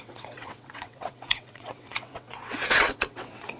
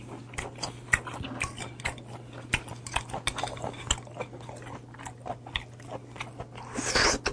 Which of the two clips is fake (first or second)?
first